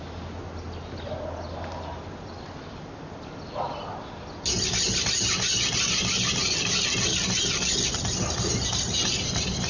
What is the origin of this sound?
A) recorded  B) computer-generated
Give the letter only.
A